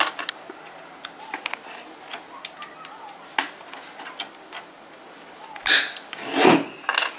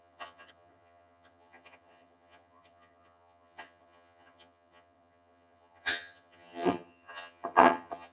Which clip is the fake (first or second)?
second